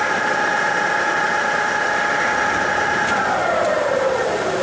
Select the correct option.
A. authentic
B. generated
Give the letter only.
B